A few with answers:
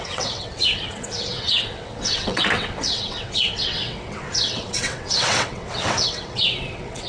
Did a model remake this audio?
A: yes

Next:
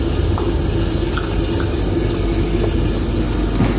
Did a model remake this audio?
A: no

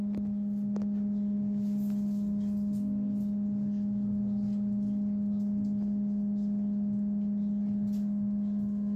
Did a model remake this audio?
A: no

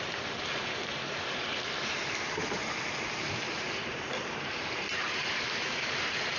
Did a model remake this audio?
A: yes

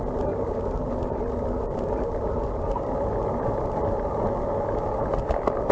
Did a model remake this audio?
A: no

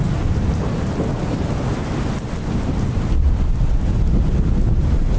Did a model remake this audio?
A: no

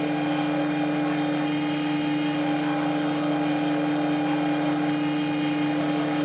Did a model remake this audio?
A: no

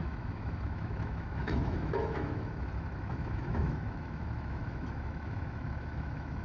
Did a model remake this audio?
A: yes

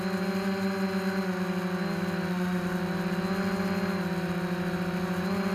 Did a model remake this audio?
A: no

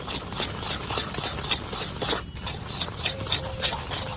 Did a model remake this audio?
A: no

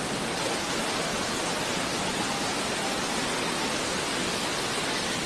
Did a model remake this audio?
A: no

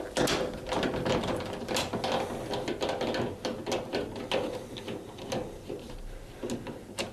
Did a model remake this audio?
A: no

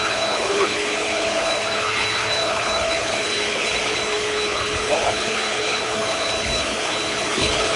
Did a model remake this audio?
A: yes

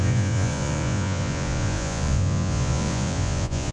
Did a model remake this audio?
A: yes